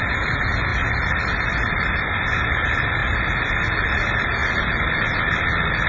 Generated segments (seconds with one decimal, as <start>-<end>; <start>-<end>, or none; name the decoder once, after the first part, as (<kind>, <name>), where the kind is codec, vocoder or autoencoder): 0.7-2.1 (vocoder, BigVGAN v2); 3.0-3.5